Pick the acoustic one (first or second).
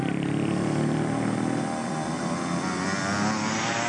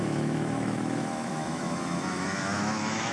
first